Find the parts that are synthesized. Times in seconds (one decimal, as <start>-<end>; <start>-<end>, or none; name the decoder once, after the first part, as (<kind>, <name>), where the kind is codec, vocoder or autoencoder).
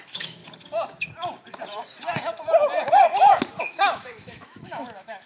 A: 0.0-0.4 (autoencoder, DAC-VAE); 3.6-5.3